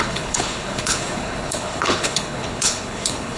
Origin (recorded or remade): remade